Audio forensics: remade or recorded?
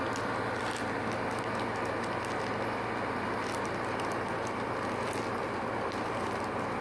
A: recorded